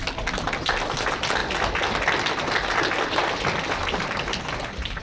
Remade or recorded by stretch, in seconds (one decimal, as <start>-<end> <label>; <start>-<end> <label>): 0.0-5.0 recorded